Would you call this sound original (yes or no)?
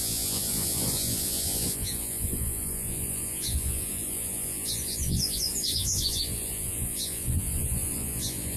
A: no